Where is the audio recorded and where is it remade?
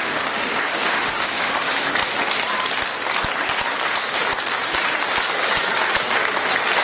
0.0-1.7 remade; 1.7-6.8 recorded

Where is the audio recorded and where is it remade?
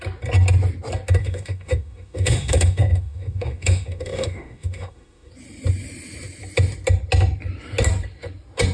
0.0-1.2 recorded; 1.2-5.3 remade; 5.3-8.7 recorded